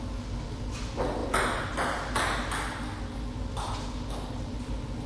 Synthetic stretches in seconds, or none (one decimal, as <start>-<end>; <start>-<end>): none